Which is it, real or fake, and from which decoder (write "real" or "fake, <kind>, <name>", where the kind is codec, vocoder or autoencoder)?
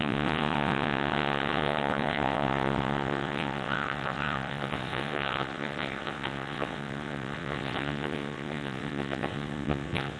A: fake, vocoder, WaveNeXt